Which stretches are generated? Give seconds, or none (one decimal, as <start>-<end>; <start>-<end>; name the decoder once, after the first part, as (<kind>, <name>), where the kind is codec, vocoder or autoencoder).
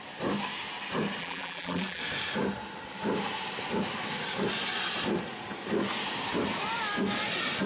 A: 1.2-2.0 (vocoder, BigVGAN v2)